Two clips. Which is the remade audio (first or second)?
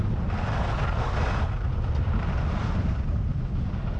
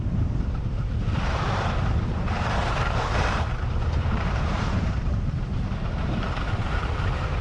second